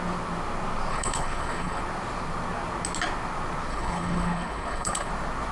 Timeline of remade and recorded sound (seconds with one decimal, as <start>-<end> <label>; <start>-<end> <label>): 0.0-0.9 recorded; 0.9-1.8 remade; 1.8-3.7 recorded; 3.7-5.1 remade; 5.1-5.5 recorded

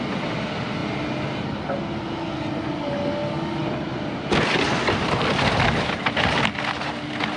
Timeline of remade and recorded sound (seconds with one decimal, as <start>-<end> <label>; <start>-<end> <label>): 0.0-7.4 recorded

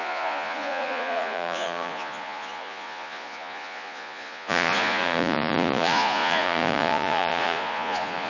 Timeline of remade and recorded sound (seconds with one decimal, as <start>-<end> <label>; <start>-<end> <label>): 0.0-8.3 remade

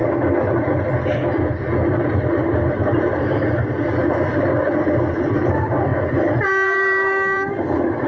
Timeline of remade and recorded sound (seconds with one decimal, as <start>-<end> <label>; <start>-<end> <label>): 0.0-1.9 recorded; 1.9-4.5 remade; 4.5-5.2 recorded; 5.2-8.1 remade

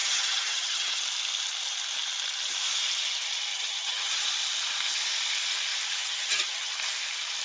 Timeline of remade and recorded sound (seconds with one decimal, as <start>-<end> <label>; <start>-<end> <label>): 0.0-1.0 remade; 1.0-3.5 recorded; 3.5-4.2 remade; 4.2-6.0 recorded; 6.0-6.7 remade; 6.7-7.4 recorded

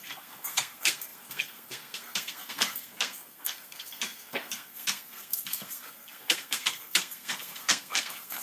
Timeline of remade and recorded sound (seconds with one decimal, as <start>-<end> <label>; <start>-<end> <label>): 0.0-8.4 remade

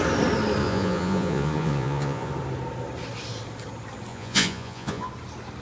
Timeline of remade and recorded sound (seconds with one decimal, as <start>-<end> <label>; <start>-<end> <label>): 0.0-0.6 recorded; 0.6-2.3 remade; 2.3-4.1 recorded; 4.1-5.1 remade; 5.1-5.6 recorded

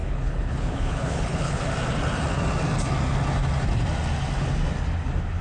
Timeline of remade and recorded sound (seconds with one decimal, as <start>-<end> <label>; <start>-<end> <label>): 0.0-1.6 remade; 1.6-5.4 recorded